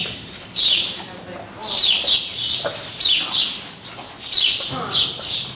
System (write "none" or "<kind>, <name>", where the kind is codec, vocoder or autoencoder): none